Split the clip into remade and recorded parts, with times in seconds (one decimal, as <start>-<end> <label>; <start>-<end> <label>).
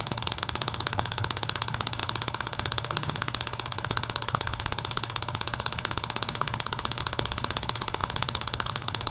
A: 0.0-9.1 remade